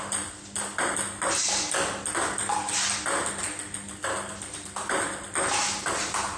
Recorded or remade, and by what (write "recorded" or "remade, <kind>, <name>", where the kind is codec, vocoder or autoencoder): recorded